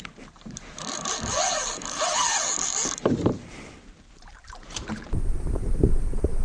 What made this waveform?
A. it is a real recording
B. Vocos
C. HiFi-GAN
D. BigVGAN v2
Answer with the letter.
D